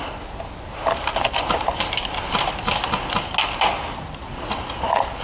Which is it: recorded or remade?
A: recorded